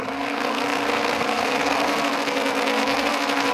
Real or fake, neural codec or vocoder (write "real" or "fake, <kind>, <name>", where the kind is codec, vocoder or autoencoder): fake, codec, SNAC